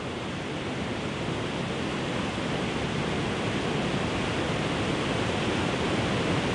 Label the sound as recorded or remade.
recorded